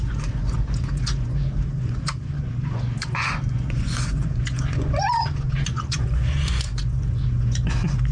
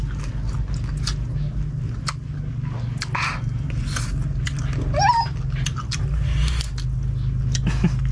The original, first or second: second